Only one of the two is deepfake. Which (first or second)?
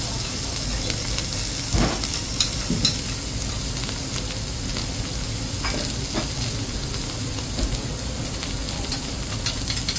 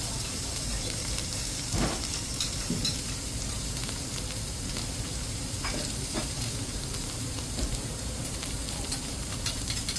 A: second